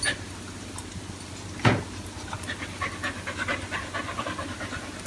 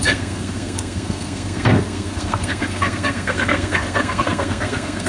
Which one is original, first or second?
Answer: first